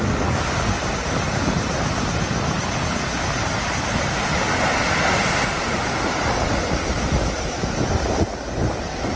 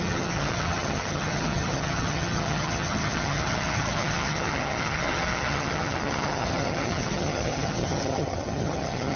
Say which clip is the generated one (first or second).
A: second